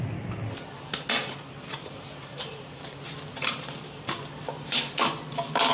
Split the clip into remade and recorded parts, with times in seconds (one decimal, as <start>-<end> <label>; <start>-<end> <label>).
0.0-1.2 recorded; 1.2-4.1 remade; 4.1-5.7 recorded